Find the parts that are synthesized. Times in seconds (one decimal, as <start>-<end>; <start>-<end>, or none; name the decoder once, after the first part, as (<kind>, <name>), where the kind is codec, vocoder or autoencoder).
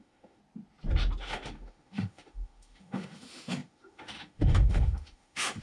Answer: 0.0-0.4 (autoencoder, DAC-VAE); 1.2-5.6